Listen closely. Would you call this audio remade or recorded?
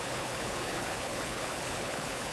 remade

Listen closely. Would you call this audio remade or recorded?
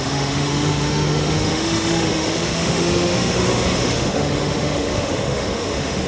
remade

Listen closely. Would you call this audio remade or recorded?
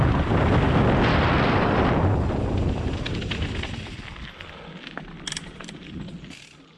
recorded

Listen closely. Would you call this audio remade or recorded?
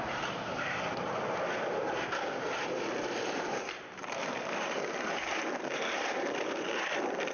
remade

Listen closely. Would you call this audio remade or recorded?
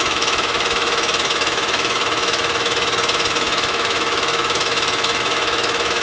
remade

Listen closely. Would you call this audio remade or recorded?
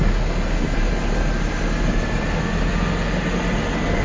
recorded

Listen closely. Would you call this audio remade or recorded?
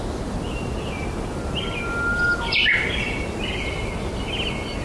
recorded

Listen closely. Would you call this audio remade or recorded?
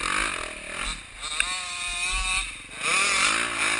recorded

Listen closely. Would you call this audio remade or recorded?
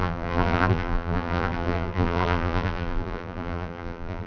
remade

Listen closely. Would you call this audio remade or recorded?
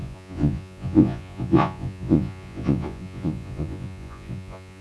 remade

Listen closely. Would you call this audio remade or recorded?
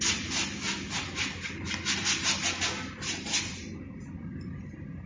recorded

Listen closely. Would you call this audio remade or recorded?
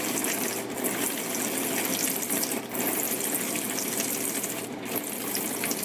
recorded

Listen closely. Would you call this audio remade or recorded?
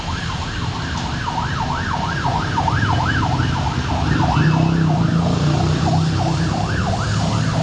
recorded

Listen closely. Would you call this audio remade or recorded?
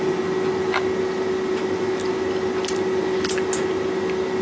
recorded